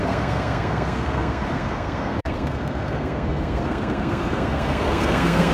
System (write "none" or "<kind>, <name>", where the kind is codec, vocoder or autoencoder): codec, SNAC